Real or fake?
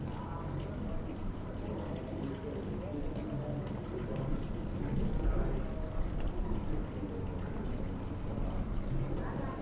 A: real